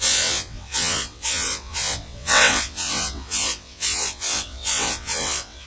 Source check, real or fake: fake